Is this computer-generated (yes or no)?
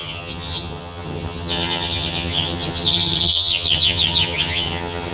yes